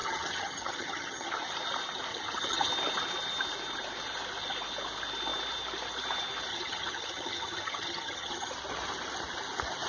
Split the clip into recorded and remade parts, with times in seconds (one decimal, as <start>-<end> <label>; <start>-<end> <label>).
0.0-1.3 remade; 1.3-2.1 recorded; 2.1-2.7 remade; 2.7-6.5 recorded; 6.5-8.5 remade; 8.5-9.9 recorded